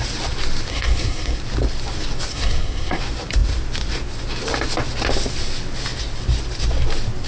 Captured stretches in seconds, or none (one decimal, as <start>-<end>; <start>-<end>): 0.0-0.7; 1.4-2.3; 3.0-7.3